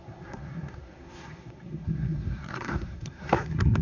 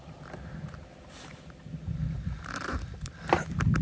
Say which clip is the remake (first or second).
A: first